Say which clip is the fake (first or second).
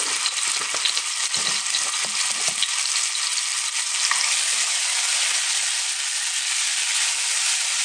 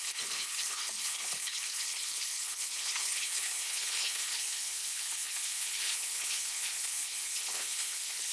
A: second